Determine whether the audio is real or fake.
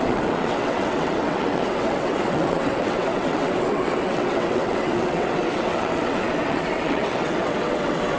fake